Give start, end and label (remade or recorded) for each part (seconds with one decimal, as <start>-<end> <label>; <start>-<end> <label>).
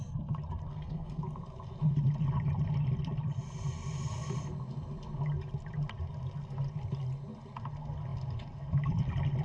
0.0-0.7 recorded; 0.7-1.2 remade; 1.2-9.4 recorded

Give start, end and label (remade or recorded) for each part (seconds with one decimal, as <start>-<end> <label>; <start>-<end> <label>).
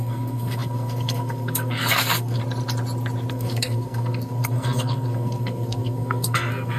0.0-2.4 remade; 2.4-3.3 recorded; 3.3-6.8 remade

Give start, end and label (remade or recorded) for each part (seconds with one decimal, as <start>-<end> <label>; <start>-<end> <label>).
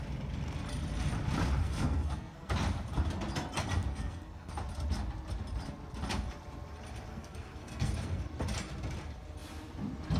0.0-1.6 recorded; 1.6-2.5 remade; 2.5-3.9 recorded; 3.9-4.5 remade; 4.5-7.1 recorded; 7.1-8.2 remade; 8.2-10.2 recorded